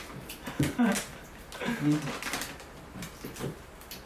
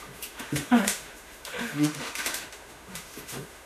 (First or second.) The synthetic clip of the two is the second